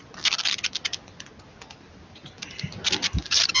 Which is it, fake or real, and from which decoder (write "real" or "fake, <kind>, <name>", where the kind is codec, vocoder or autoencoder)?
real